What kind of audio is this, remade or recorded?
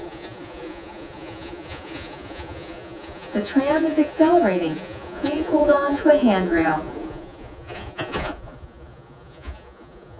remade